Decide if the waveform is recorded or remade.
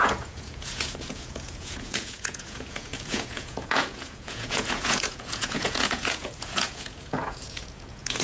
remade